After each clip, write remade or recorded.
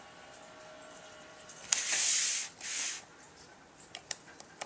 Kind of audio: remade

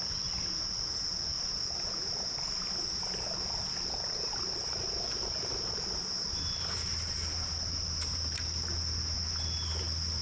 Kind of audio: recorded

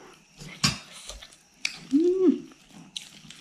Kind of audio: recorded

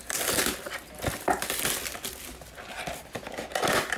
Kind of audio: recorded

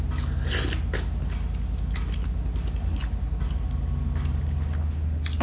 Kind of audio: recorded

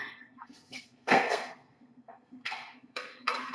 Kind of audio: remade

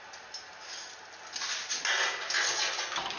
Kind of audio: recorded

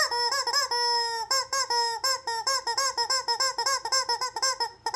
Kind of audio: recorded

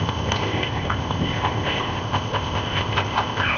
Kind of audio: remade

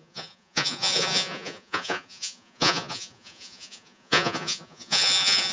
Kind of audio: remade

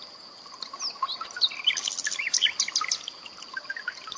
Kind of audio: recorded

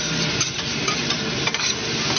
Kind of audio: remade